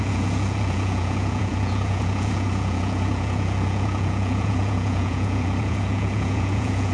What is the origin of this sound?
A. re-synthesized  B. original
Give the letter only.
A